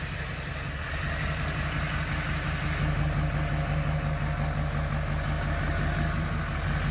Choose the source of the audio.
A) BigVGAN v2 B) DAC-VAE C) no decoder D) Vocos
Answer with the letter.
C